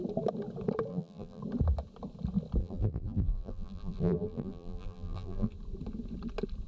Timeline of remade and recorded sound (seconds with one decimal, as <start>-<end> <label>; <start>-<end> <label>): 0.0-0.9 recorded; 0.9-1.4 remade; 1.4-2.6 recorded; 2.6-5.5 remade; 5.5-6.7 recorded